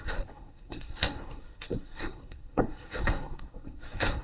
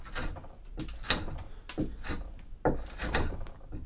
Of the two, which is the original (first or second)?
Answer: second